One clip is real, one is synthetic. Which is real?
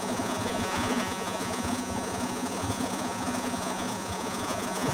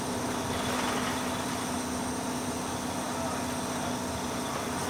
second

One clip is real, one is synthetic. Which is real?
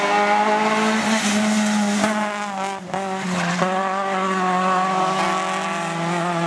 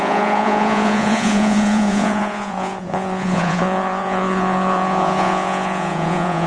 first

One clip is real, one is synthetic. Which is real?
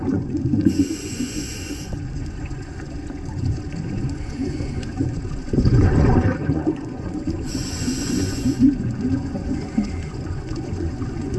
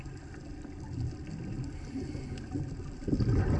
second